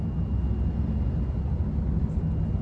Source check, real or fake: real